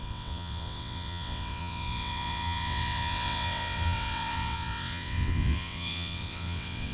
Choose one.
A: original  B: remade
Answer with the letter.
B